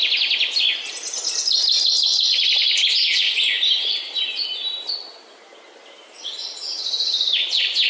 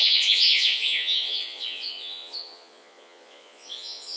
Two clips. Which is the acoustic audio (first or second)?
first